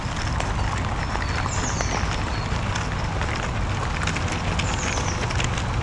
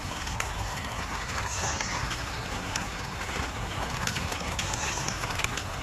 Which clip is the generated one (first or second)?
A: second